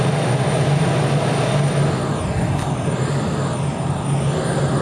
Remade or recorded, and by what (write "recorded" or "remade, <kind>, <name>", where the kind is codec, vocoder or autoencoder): recorded